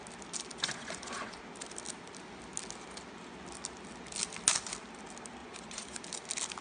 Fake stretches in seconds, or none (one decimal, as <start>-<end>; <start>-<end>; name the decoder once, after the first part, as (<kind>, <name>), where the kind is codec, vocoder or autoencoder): 0.5-1.4 (vocoder, Vocos); 5.4-6.0